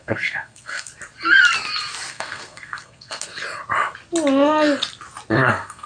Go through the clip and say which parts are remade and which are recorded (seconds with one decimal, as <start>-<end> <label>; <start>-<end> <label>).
0.0-0.9 remade; 0.9-2.1 recorded; 2.1-3.3 remade; 3.3-5.3 recorded; 5.3-5.9 remade